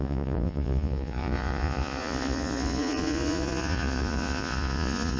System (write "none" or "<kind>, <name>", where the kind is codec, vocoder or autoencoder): vocoder, Vocos